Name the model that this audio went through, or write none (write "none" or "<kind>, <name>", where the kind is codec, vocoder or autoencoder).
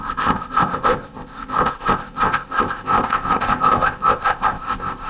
codec, ZipCodec